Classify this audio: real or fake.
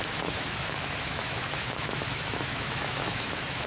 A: fake